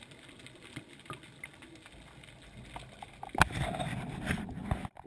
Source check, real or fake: real